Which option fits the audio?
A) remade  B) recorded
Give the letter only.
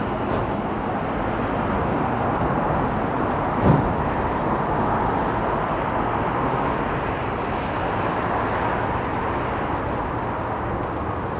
B